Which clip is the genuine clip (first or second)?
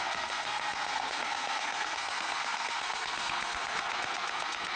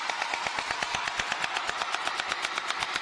second